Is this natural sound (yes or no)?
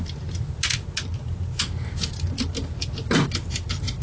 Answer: yes